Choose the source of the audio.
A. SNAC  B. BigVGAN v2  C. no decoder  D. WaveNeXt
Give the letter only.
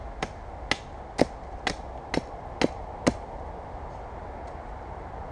C